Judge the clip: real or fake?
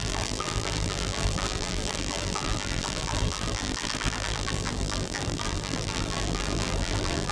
fake